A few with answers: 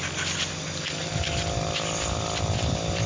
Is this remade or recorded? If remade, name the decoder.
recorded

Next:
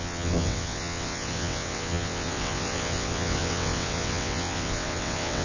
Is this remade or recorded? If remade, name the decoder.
remade, vocoder, WaveNeXt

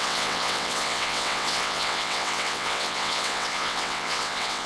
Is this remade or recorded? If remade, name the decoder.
remade, vocoder, WaveNeXt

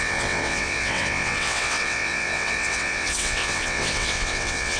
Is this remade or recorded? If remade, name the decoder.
remade, vocoder, WaveNeXt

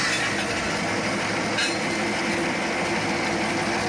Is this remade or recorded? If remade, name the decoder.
recorded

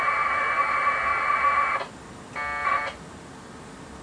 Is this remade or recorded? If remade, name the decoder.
recorded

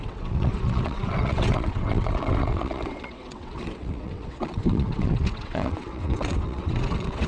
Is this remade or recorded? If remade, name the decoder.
remade, vocoder, WaveNeXt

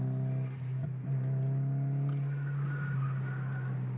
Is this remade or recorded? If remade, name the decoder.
recorded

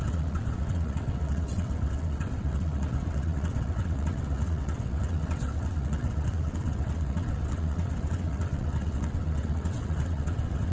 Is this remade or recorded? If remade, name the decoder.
remade, vocoder, WaveNeXt